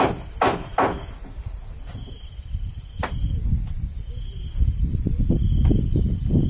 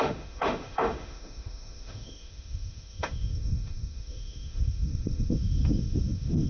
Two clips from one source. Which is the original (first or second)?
first